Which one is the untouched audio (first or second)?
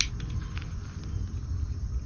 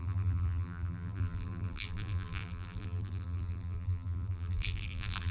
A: first